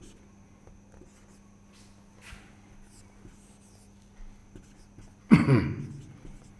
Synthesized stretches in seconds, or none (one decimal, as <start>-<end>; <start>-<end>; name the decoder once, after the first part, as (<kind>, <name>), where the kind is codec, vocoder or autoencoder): none